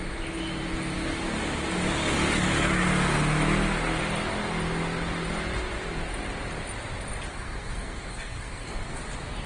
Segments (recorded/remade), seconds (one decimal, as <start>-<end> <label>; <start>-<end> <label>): 0.0-7.3 recorded; 7.3-9.0 remade; 9.0-9.5 recorded